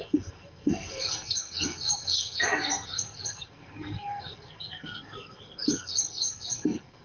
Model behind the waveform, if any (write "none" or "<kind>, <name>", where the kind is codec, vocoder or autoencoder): codec, SNAC